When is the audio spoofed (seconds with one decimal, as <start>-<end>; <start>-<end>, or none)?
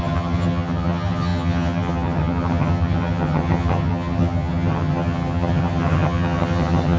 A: 0.0-7.0